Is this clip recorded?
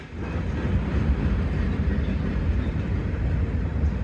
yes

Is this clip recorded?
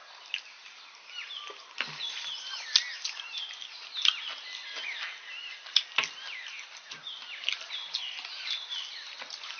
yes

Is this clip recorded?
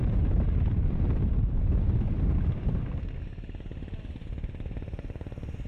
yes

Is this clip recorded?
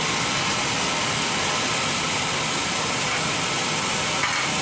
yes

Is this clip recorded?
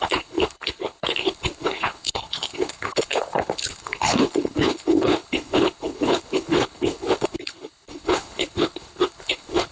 no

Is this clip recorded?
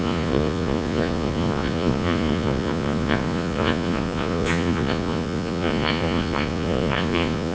no